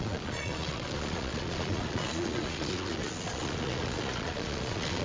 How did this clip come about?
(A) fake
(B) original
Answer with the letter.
A